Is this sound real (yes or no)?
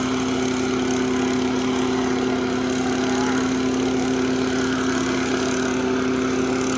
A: yes